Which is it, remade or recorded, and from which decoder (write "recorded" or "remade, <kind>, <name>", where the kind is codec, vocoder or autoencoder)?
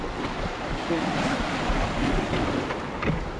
recorded